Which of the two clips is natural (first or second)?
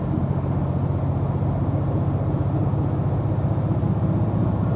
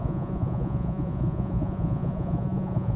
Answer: first